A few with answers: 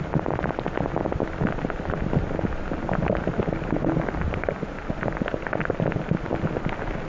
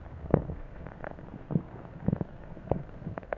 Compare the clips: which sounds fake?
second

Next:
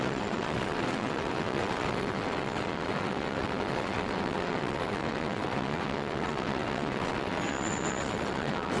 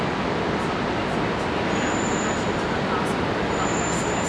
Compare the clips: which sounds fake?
first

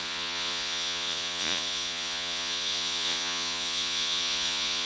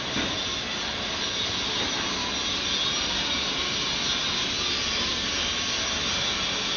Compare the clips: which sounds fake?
first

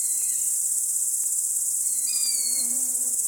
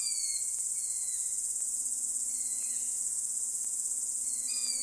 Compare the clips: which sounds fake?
second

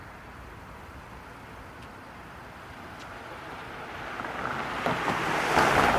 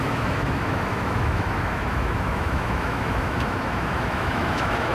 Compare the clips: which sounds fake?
second